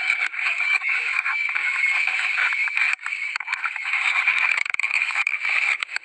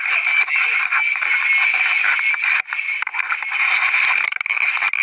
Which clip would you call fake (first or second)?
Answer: first